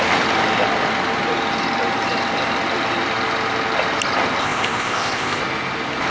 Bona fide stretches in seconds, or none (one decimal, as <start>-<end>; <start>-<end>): 0.0-4.4; 5.4-6.1